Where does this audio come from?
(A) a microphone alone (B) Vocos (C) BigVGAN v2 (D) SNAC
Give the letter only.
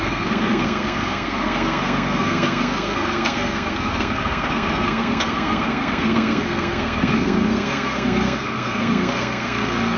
D